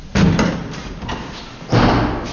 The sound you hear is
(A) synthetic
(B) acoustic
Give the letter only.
B